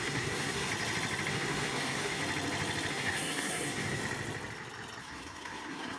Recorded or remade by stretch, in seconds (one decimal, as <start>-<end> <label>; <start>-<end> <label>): 0.0-0.7 remade; 0.7-1.3 recorded; 1.3-2.2 remade; 2.2-2.9 recorded; 2.9-4.0 remade; 4.0-5.0 recorded; 5.0-6.0 remade